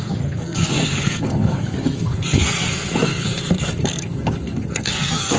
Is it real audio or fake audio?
fake